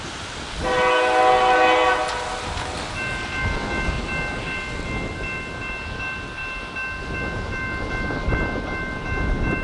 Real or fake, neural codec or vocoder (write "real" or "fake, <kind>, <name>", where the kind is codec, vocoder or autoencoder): real